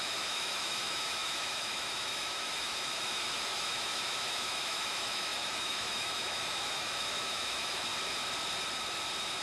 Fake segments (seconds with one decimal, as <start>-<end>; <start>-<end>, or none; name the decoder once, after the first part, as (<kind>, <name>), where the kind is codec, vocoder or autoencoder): 0.0-7.9 (autoencoder, DAC-VAE)